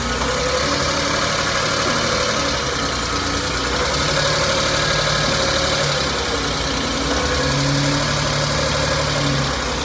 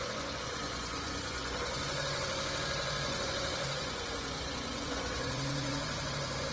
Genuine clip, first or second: first